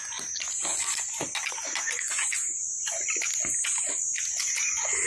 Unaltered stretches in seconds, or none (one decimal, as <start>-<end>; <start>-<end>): 0.0-5.1